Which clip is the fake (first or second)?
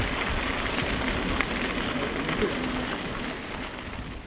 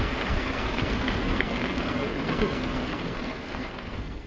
second